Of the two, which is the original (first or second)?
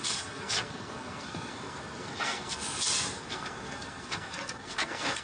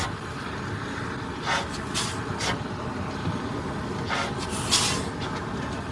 second